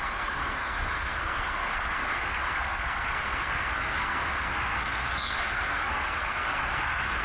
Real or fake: fake